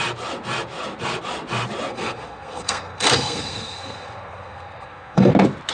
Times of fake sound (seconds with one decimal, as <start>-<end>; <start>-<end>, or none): 1.9-5.3